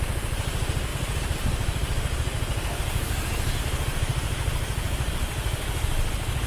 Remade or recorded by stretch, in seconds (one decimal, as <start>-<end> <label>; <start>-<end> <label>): 0.0-6.5 recorded